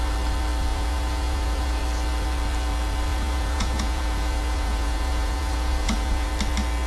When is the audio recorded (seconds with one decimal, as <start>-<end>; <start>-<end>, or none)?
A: 0.0-0.7; 1.8-3.1; 6.3-6.9